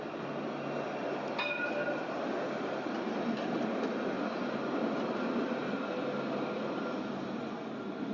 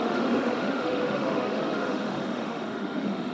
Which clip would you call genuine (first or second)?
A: first